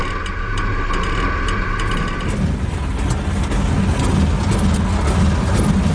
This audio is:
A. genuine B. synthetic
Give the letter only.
A